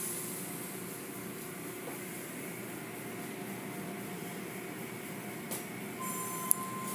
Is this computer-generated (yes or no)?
no